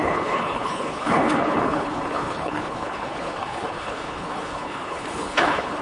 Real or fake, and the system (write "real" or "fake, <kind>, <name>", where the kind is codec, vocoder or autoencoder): fake, codec, HILCodec